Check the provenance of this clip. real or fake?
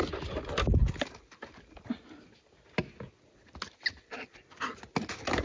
real